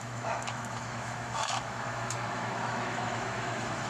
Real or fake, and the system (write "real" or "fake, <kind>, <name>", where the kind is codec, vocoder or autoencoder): fake, autoencoder, DAC-VAE